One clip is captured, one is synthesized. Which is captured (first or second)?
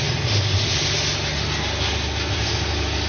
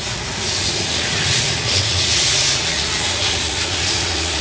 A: first